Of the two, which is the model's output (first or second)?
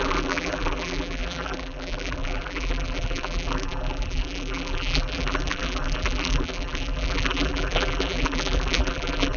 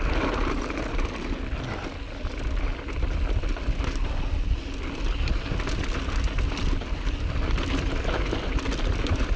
first